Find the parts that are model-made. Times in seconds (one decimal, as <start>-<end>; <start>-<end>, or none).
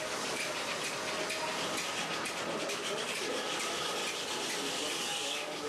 0.0-0.4; 2.6-4.0; 4.7-5.7